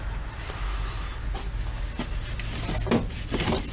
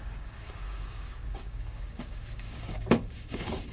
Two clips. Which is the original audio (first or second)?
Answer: first